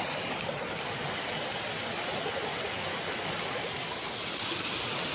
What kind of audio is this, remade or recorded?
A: recorded